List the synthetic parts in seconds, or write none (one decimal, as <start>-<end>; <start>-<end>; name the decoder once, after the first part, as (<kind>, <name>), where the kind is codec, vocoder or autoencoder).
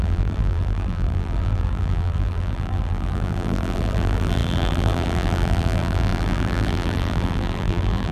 0.0-8.1 (vocoder, BigVGAN v2)